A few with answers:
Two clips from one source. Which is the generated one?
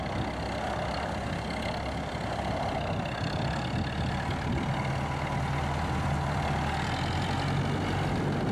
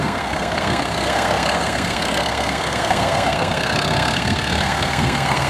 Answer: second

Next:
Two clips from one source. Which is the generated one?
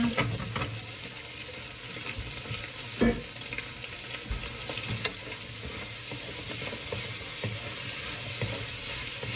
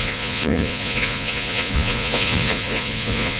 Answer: second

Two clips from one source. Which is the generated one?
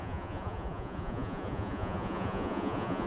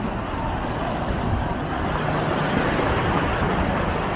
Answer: first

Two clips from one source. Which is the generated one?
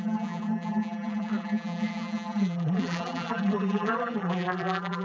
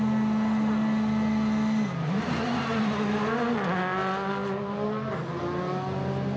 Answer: first